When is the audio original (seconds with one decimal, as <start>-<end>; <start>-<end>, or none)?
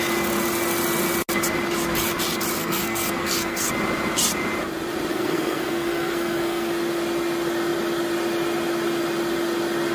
0.0-2.6; 3.7-5.1; 6.7-9.9